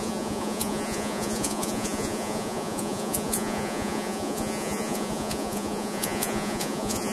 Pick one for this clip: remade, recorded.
remade